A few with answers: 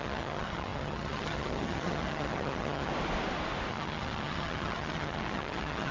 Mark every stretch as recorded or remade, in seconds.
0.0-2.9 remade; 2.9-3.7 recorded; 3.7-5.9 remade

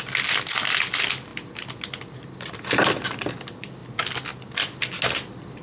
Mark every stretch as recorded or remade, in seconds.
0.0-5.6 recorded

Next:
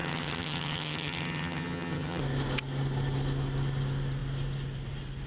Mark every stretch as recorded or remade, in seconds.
0.0-2.2 remade; 2.2-5.3 recorded

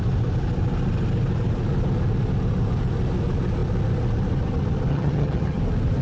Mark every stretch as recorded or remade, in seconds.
0.0-4.9 recorded; 4.9-5.6 remade; 5.6-6.0 recorded

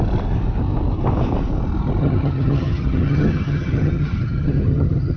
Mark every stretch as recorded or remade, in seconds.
0.0-2.0 recorded; 2.0-5.2 remade